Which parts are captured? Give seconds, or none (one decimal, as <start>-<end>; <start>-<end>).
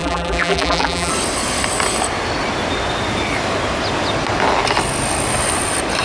1.1-6.0